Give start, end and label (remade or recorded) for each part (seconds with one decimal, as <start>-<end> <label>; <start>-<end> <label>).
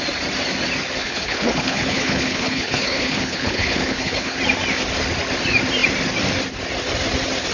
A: 0.0-1.0 recorded; 1.0-4.4 remade; 4.4-7.5 recorded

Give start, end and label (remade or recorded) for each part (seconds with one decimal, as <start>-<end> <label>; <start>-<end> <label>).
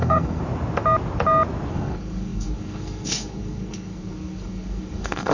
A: 0.0-0.4 remade; 0.4-1.7 recorded; 1.7-5.3 remade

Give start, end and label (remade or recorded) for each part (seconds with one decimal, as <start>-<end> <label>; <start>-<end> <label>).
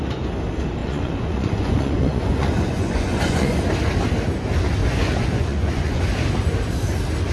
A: 0.0-0.8 recorded; 0.8-3.6 remade; 3.6-4.8 recorded; 4.8-6.0 remade; 6.0-7.3 recorded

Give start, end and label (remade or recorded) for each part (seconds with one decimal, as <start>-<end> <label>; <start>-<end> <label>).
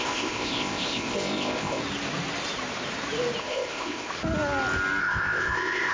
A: 0.0-1.8 remade; 1.8-3.4 recorded; 3.4-4.1 remade; 4.1-5.0 recorded; 5.0-5.9 remade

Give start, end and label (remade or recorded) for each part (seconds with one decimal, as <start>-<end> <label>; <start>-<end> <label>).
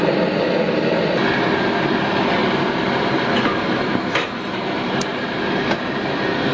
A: 0.0-2.4 recorded; 2.4-5.4 remade; 5.4-6.5 recorded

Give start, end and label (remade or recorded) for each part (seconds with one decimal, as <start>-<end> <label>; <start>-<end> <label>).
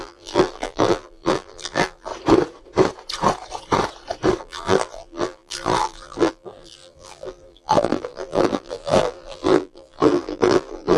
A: 0.0-2.1 remade; 2.1-4.4 recorded; 4.4-11.0 remade